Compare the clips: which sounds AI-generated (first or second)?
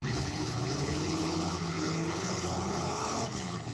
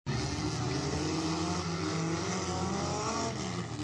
first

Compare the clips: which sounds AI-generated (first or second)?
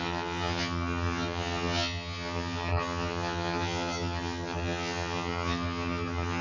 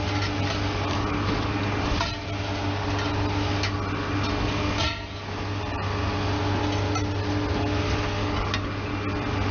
first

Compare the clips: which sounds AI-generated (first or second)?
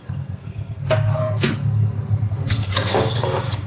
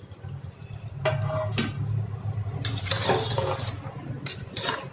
first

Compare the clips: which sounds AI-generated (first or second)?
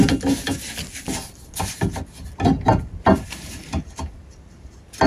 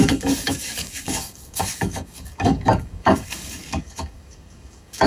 second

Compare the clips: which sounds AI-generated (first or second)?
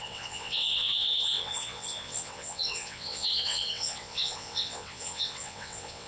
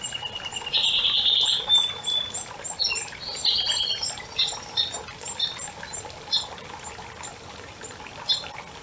first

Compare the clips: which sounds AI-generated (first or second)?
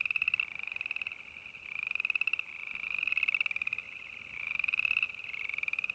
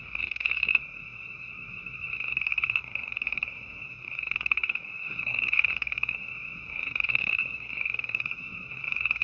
second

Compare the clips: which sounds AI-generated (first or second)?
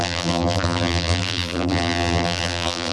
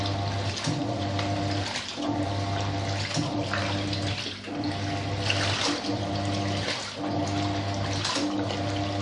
first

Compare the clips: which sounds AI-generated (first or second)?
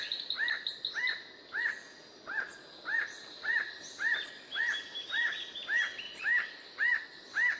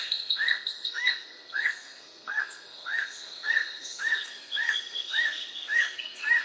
second